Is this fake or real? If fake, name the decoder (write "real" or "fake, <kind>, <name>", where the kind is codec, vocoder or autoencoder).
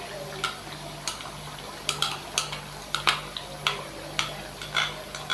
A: real